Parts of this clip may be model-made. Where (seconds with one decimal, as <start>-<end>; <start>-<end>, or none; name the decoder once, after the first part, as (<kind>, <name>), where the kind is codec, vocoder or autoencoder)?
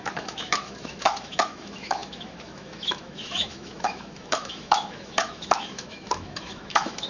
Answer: 0.0-7.1 (autoencoder, DAC-VAE)